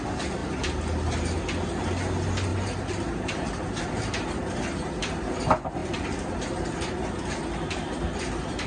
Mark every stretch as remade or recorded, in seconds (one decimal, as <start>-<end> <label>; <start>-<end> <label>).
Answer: 0.0-2.5 recorded; 2.5-3.9 remade; 3.9-8.7 recorded